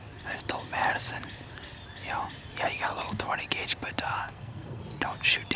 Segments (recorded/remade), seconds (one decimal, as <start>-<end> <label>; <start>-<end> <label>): 0.0-4.2 recorded; 4.2-4.8 remade; 4.8-5.6 recorded